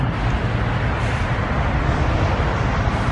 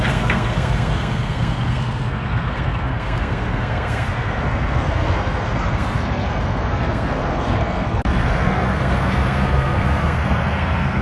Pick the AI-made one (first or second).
second